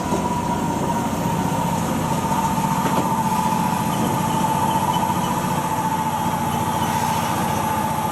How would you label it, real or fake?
real